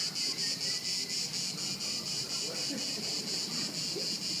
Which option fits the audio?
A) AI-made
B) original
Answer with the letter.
B